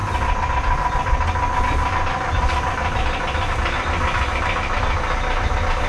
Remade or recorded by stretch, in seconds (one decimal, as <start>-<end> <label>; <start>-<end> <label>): 0.0-5.9 recorded